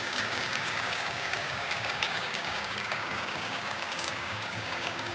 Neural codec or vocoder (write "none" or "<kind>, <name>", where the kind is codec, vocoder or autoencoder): codec, DAC